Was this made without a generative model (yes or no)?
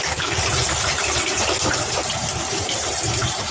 no